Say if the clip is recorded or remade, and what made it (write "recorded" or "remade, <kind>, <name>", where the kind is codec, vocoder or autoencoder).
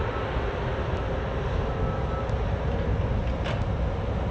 recorded